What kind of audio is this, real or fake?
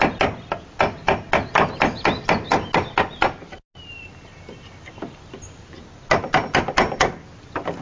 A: real